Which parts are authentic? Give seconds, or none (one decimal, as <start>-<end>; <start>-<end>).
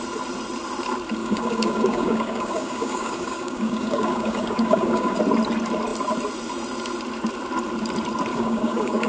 0.0-1.2; 5.2-8.3